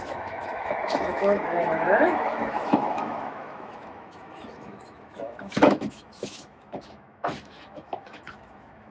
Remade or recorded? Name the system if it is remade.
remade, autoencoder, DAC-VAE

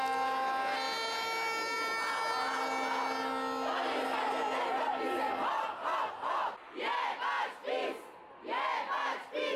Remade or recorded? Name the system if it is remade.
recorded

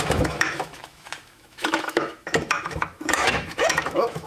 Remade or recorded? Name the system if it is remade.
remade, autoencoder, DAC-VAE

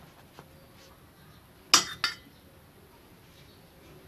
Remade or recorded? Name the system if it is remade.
recorded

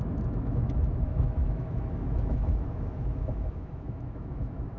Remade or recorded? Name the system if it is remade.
remade, autoencoder, DAC-VAE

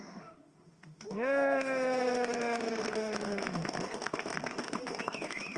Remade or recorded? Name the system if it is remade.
remade, autoencoder, DAC-VAE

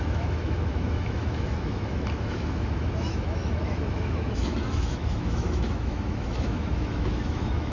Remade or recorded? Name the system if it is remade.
remade, autoencoder, DAC-VAE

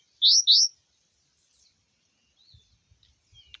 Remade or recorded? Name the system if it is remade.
recorded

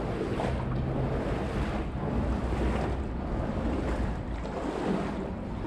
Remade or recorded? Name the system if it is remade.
recorded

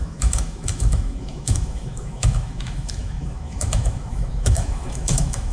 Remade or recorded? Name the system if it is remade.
remade, autoencoder, DAC-VAE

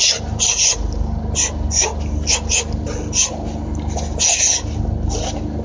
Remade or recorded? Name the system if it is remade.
recorded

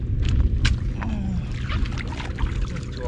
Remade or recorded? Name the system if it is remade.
recorded